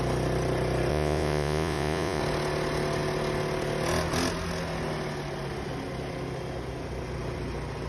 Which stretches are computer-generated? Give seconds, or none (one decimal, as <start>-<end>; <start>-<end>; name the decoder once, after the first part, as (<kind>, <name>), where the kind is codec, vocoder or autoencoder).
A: 0.9-2.2 (vocoder, Vocos)